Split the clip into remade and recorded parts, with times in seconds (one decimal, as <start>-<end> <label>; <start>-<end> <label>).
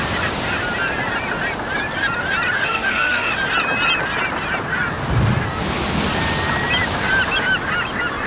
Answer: 0.0-2.6 recorded; 2.6-3.3 remade; 3.3-8.3 recorded